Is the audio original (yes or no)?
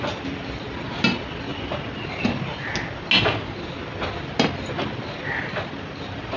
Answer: yes